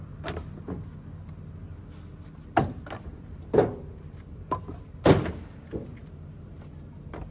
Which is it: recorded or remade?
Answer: recorded